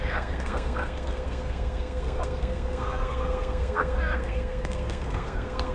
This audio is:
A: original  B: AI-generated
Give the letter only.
B